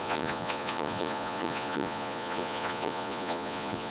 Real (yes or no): no